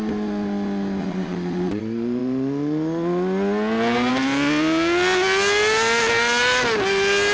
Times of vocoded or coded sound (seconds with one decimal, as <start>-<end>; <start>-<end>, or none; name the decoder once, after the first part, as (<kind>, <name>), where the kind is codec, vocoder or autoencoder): 1.0-1.8 (vocoder, Vocos)